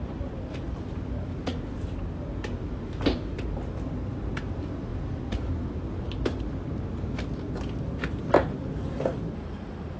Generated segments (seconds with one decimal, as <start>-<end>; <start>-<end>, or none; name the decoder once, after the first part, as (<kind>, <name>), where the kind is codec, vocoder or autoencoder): none